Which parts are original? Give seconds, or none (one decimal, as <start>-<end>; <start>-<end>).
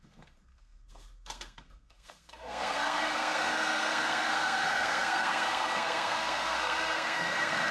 none